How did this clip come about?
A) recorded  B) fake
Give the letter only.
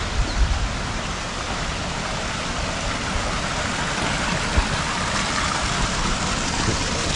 A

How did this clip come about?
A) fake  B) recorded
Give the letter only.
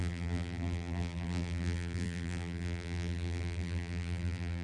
A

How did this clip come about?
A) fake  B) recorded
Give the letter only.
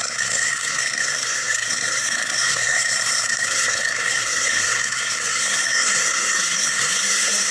A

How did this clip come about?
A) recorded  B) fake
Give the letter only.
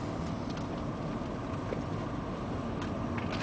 A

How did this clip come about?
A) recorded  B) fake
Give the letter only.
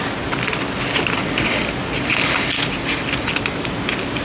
A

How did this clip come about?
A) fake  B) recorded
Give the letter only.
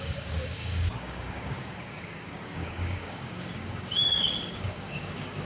A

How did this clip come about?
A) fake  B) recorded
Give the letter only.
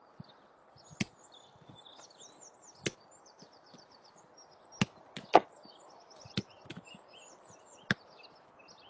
B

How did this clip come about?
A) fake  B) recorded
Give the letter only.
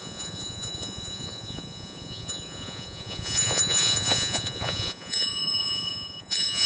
A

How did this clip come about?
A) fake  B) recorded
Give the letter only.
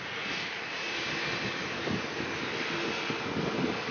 B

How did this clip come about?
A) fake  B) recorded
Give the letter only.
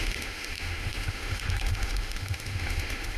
A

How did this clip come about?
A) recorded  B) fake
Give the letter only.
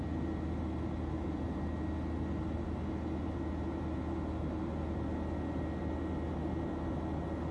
A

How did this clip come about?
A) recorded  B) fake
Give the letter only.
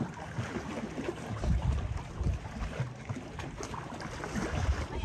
A